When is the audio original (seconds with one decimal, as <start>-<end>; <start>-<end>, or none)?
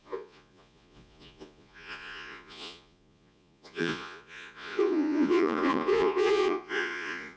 none